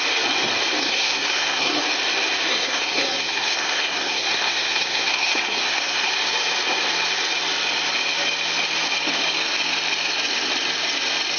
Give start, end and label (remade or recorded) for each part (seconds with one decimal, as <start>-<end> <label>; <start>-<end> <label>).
0.0-0.8 recorded; 0.8-1.8 remade; 1.8-2.5 recorded; 2.5-6.1 remade; 6.1-11.4 recorded